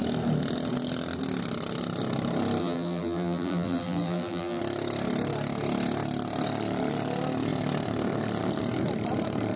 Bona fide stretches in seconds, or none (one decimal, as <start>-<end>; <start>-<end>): 0.0-2.6; 4.6-9.6